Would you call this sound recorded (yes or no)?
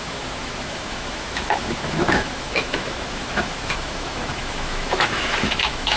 no